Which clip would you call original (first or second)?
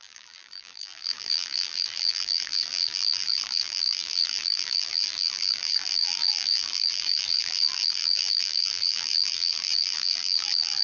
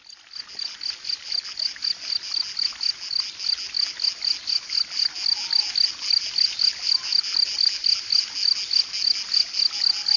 second